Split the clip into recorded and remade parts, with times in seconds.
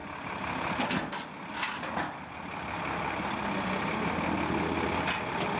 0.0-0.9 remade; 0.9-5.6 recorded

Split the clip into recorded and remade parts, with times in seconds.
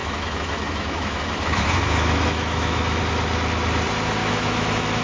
0.0-3.0 remade; 3.0-4.2 recorded; 4.2-5.0 remade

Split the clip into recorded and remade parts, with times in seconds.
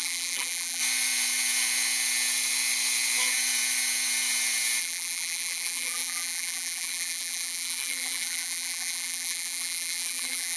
0.0-0.8 remade; 0.8-4.8 recorded; 4.8-10.6 remade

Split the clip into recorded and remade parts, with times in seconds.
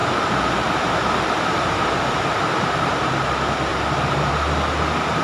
0.0-3.1 remade; 3.1-3.7 recorded; 3.7-4.3 remade; 4.3-5.2 recorded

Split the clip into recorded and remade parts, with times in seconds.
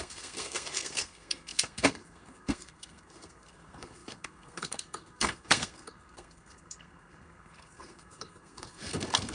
0.0-9.3 remade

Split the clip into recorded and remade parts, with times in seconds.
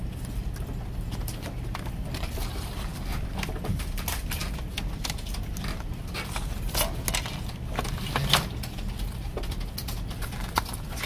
0.0-11.1 recorded